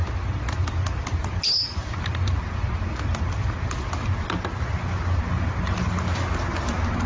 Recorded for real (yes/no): yes